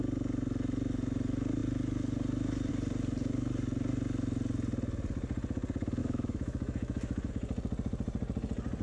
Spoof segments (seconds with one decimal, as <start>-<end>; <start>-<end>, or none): 6.0-7.3